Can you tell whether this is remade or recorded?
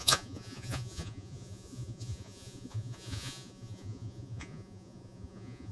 remade